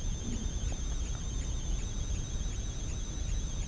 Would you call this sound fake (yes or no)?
yes